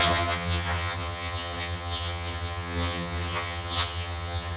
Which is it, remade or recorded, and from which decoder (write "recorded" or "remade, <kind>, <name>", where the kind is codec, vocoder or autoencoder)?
remade, vocoder, HiFi-GAN